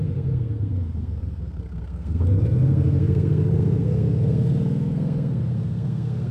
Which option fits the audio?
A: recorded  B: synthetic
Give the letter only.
B